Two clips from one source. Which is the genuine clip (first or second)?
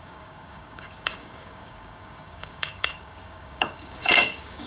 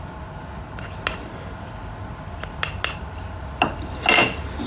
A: second